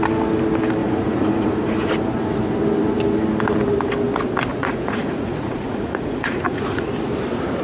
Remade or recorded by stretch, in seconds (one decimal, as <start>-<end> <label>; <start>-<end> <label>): 0.0-0.8 recorded; 0.8-1.9 remade; 1.9-4.5 recorded; 4.5-6.9 remade; 6.9-7.6 recorded